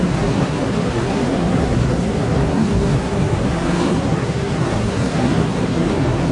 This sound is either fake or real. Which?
fake